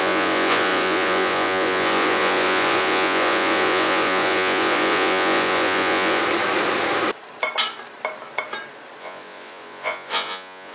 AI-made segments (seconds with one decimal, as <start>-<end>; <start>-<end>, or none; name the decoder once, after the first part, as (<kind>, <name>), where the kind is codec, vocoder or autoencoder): 0.0-6.2 (vocoder, Vocos); 9.0-10.7